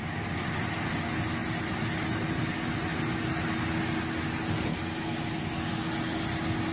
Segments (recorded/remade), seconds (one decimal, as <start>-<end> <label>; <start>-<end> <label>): 0.0-6.7 recorded